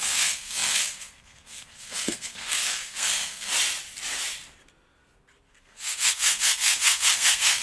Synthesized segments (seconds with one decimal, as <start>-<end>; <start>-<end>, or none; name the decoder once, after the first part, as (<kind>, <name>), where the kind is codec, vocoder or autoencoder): 0.0-3.5 (codec, SNAC); 5.5-7.6